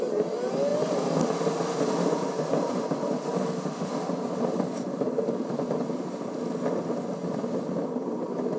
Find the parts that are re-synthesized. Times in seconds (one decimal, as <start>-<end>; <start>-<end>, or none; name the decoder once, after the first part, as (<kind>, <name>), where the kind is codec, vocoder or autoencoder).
none